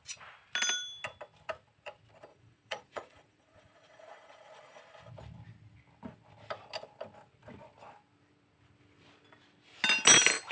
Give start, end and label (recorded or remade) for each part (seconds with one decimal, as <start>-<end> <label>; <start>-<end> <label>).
0.0-2.3 recorded; 2.3-4.8 remade; 4.8-10.5 recorded